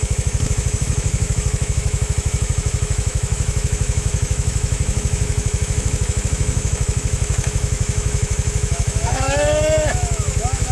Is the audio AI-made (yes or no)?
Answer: yes